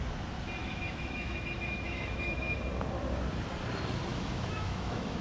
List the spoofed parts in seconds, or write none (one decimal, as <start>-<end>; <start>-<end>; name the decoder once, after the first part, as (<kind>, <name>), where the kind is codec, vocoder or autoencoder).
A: 0.6-2.6 (autoencoder, DAC-VAE); 4.1-5.2